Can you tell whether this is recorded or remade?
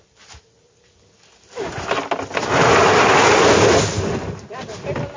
recorded